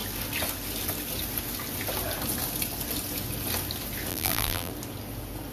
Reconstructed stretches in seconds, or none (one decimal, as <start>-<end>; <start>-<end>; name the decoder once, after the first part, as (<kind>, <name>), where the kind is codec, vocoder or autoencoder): 4.1-4.7 (vocoder, BigVGAN v2)